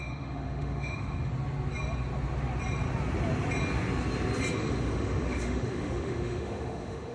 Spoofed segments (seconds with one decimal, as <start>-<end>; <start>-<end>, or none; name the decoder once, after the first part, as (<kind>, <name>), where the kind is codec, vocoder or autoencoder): 0.0-1.3 (autoencoder, DAC-VAE); 4.6-7.1